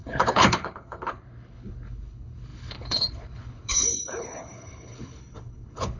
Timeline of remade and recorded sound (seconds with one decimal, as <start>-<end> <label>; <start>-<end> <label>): 0.0-6.0 remade